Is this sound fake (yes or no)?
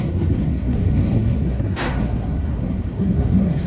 yes